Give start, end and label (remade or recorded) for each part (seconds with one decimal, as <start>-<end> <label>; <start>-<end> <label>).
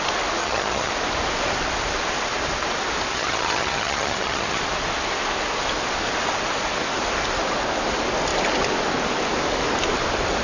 0.0-0.4 recorded; 0.4-0.9 remade; 0.9-3.1 recorded; 3.1-4.6 remade; 4.6-10.4 recorded